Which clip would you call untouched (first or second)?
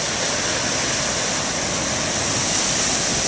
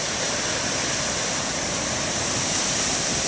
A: first